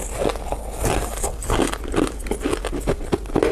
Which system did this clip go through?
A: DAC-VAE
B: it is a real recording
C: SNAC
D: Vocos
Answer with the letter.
B